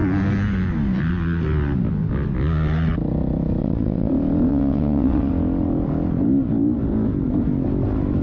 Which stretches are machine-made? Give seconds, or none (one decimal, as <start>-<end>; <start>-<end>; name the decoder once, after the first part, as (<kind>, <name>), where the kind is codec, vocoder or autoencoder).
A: 3.6-4.1 (vocoder, WaveNeXt); 4.5-5.3